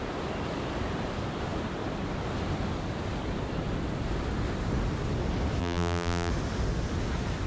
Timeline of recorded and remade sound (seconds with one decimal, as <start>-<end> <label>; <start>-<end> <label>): 0.0-5.6 recorded; 5.6-6.3 remade; 6.3-7.5 recorded

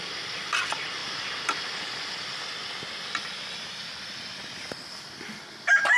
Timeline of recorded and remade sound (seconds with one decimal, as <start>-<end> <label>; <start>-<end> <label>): 0.0-6.0 remade